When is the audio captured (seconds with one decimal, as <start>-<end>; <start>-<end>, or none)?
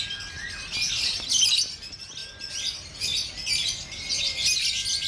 0.0-5.1